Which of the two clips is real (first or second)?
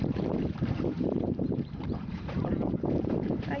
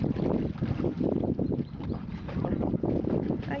second